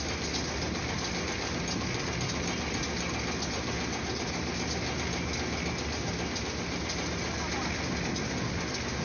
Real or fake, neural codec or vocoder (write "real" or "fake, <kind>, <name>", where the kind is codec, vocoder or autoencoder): real